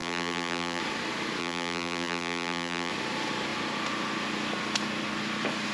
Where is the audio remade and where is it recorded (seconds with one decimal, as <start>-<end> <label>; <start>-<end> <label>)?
0.0-0.8 remade; 0.8-1.4 recorded; 1.4-2.9 remade; 2.9-5.7 recorded